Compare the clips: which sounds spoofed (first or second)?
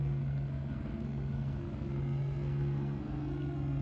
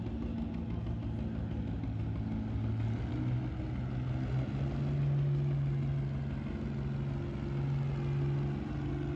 first